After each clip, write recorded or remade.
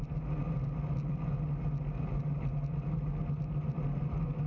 recorded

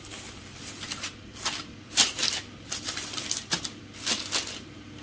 remade